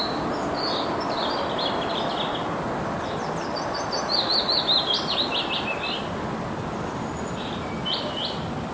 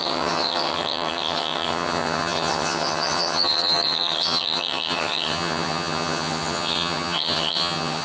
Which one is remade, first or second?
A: second